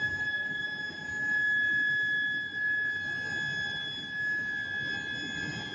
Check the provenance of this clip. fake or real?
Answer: real